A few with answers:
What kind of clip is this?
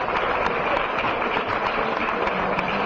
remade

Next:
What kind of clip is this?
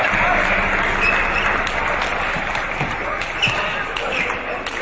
recorded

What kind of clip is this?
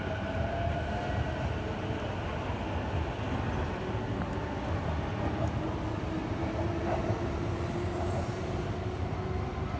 recorded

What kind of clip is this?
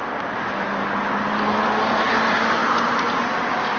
recorded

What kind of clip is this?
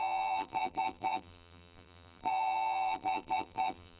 remade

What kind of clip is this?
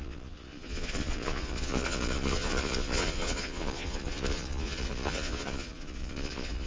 remade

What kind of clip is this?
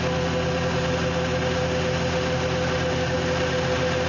recorded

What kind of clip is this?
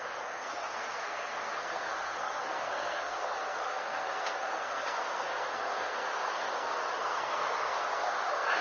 remade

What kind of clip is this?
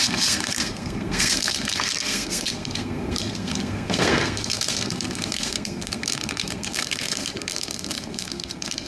remade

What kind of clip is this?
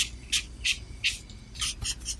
recorded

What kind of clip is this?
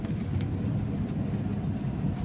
recorded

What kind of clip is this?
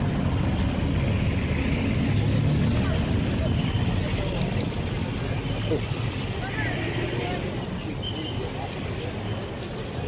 recorded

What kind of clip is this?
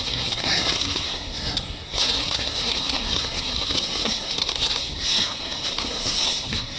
remade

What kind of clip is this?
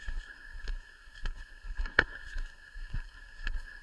remade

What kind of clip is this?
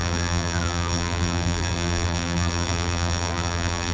remade